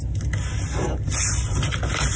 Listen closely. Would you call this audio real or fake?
real